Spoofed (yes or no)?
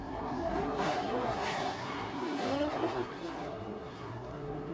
yes